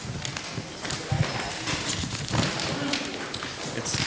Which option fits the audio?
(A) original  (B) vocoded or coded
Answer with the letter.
A